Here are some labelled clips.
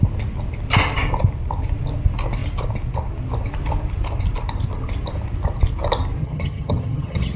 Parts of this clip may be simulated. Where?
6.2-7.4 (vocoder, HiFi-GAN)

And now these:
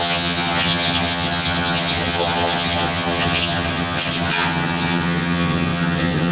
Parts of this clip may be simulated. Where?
0.0-6.3 (vocoder, HiFi-GAN)

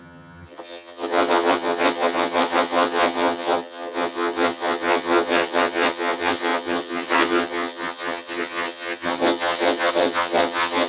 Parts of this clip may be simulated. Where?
0.0-10.9 (vocoder, HiFi-GAN)